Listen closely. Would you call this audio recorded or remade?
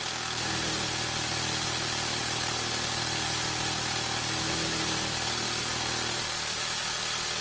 recorded